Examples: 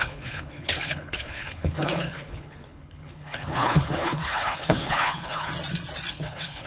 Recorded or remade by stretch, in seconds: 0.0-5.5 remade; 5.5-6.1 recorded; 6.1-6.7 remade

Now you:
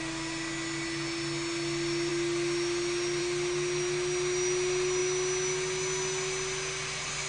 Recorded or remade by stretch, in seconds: 0.0-7.3 recorded

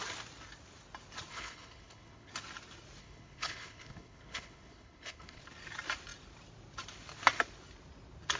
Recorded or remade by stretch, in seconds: 0.0-1.3 recorded; 1.3-2.3 remade; 2.3-3.0 recorded; 3.0-5.4 remade; 5.4-8.4 recorded